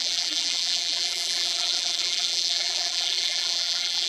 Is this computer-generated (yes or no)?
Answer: yes